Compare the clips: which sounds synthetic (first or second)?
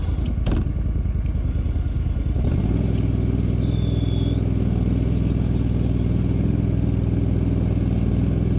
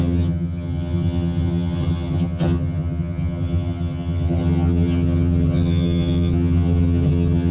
second